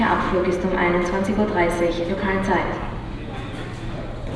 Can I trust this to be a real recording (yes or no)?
yes